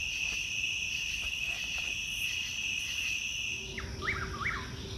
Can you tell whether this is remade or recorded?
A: recorded